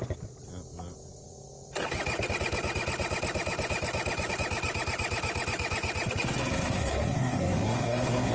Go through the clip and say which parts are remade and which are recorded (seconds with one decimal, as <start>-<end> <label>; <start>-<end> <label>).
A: 0.0-6.4 recorded; 6.4-8.3 remade